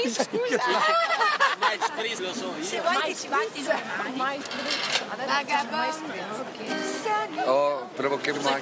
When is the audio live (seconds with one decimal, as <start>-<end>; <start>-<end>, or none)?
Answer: 0.0-0.5; 3.0-6.8; 8.1-8.6